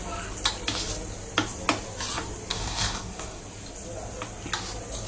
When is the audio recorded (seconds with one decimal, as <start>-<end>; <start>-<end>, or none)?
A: 0.0-2.5; 3.4-5.1

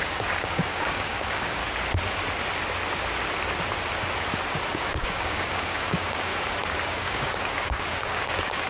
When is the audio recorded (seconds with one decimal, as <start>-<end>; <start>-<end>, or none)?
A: 1.6-4.8; 6.3-6.8

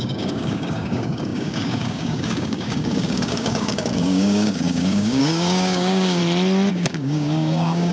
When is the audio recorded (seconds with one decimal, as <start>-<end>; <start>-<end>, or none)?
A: 6.2-6.7

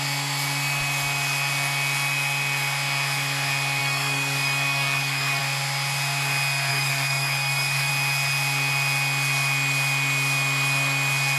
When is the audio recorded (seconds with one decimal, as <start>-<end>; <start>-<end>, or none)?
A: 0.0-3.8; 5.4-6.7; 7.9-11.4